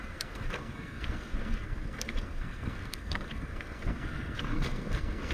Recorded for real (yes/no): no